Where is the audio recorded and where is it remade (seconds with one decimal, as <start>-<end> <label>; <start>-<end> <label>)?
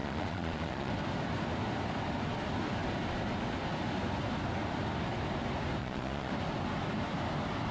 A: 0.0-0.9 remade; 0.9-5.8 recorded; 5.8-6.3 remade; 6.3-7.7 recorded